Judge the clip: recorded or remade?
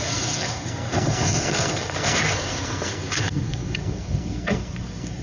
remade